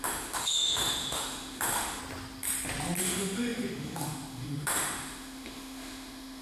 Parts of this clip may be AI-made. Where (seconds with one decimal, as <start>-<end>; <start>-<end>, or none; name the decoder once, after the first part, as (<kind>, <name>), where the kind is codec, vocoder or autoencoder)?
0.0-2.0 (autoencoder, DAC-VAE); 3.0-6.4